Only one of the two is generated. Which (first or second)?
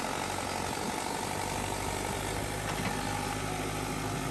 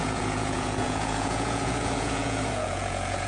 second